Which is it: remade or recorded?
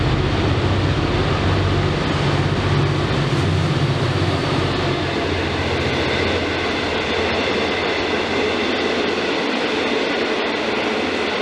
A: recorded